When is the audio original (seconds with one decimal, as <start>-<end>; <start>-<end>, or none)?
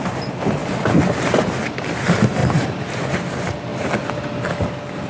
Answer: 0.0-2.4; 3.1-5.1